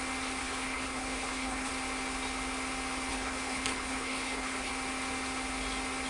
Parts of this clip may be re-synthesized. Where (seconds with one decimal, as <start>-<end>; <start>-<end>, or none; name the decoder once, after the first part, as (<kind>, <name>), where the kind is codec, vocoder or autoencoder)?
0.4-1.7 (codec, HILCodec); 3.1-4.7